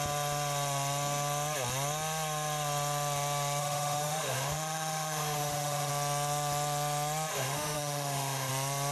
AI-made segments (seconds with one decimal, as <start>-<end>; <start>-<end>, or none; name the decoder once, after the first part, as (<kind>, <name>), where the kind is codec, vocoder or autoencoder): 3.6-5.9 (autoencoder, DAC-VAE); 7.3-8.5